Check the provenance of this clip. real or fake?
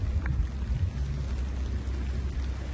real